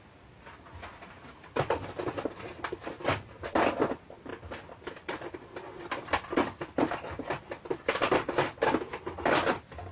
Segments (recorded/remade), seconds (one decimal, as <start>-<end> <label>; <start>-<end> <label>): 0.0-9.9 recorded